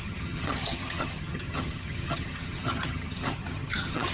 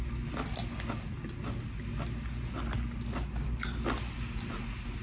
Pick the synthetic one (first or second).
first